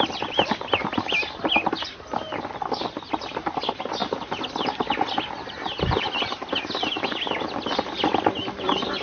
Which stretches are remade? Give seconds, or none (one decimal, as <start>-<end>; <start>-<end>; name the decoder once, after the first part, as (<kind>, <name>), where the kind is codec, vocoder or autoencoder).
none